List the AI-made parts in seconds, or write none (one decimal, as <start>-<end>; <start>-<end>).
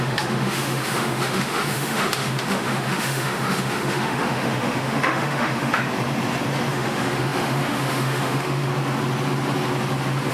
0.0-5.8; 6.7-8.7